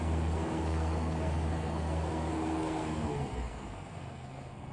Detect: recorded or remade remade